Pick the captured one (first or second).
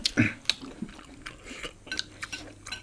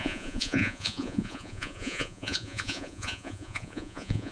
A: first